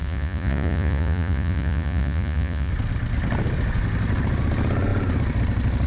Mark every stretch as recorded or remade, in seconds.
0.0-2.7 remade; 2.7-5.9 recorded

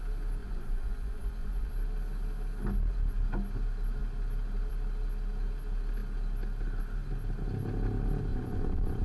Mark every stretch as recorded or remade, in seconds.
0.0-0.4 recorded; 0.4-1.7 remade; 1.7-8.3 recorded; 8.3-9.0 remade

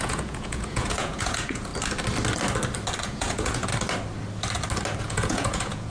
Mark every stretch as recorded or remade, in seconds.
0.0-1.7 remade; 1.7-3.0 recorded; 3.0-3.7 remade; 3.7-5.0 recorded; 5.0-5.9 remade

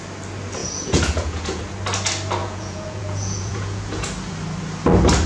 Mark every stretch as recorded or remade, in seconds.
0.0-0.6 recorded; 0.6-1.6 remade; 1.6-2.4 recorded; 2.4-4.0 remade; 4.0-5.3 recorded

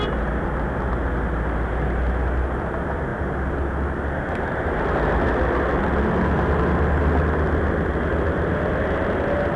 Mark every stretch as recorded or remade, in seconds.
0.0-9.6 recorded

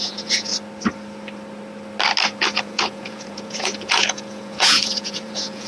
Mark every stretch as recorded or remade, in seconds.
0.0-0.5 remade; 0.5-2.4 recorded; 2.4-5.7 remade